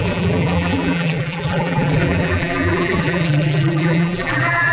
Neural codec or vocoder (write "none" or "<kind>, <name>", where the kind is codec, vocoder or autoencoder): vocoder, BigVGAN v2